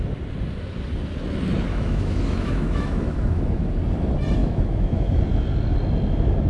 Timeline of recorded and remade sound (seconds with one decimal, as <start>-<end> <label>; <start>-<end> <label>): 0.0-1.7 recorded; 1.7-3.7 remade; 3.7-4.4 recorded; 4.4-5.2 remade; 5.2-6.5 recorded